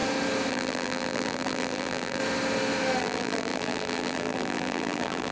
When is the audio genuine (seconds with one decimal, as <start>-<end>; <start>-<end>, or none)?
0.0-0.5; 2.2-3.0